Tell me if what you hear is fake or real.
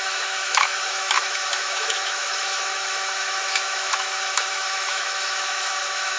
fake